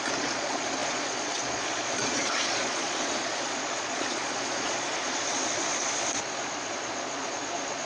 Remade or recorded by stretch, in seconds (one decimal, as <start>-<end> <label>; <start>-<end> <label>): 0.0-7.9 remade